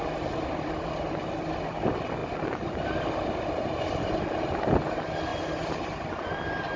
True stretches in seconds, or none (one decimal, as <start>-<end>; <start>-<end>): 0.0-6.8